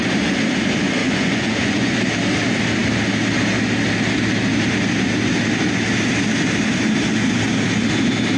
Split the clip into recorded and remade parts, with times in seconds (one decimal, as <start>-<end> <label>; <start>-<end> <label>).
0.0-1.0 recorded; 1.0-2.0 remade; 2.0-8.4 recorded